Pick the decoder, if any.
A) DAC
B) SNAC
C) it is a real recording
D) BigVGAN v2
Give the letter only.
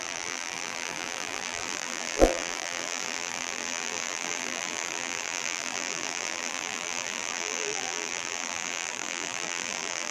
D